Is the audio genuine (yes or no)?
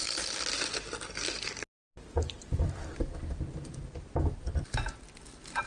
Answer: yes